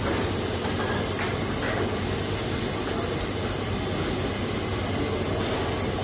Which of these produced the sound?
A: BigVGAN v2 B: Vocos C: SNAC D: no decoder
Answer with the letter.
D